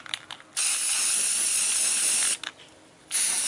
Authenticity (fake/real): real